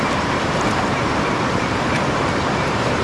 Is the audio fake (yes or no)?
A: yes